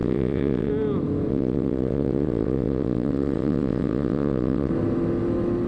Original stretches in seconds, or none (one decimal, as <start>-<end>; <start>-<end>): 0.7-1.3; 4.7-5.7